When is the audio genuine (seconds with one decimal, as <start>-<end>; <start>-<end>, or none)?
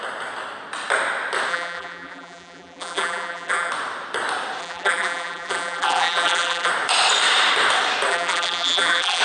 0.0-1.5; 3.7-4.6; 6.7-8.1